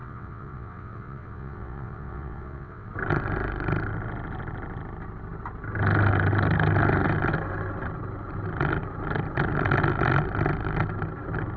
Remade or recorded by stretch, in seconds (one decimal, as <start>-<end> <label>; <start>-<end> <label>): 0.0-2.9 remade; 2.9-11.6 recorded